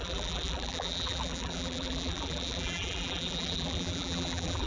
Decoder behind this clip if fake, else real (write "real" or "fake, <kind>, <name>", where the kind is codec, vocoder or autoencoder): fake, vocoder, BigVGAN v2